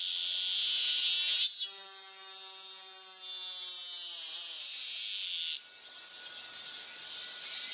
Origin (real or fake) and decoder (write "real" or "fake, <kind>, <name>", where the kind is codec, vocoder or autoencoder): real